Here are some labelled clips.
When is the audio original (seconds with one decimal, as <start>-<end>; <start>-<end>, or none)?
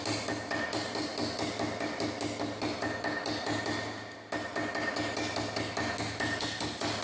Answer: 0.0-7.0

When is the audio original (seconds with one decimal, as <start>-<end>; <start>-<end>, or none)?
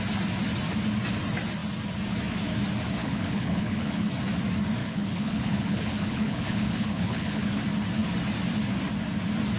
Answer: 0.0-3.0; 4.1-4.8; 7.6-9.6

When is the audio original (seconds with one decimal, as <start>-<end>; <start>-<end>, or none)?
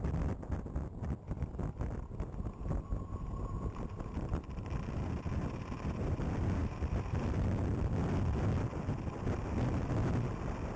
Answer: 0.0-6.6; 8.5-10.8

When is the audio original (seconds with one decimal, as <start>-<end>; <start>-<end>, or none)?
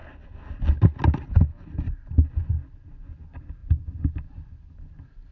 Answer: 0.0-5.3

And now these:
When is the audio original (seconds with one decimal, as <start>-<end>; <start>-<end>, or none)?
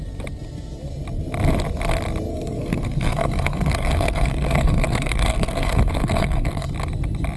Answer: 0.0-2.3; 6.7-7.4